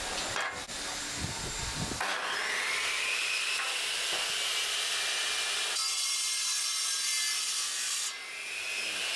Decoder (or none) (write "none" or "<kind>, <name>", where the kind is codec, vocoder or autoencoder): none